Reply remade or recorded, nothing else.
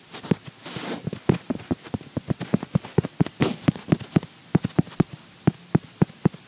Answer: recorded